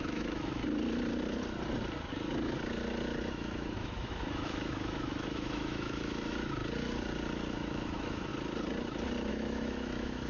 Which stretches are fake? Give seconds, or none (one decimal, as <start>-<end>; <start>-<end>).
0.0-0.6; 3.3-6.6; 7.5-8.3; 9.3-10.3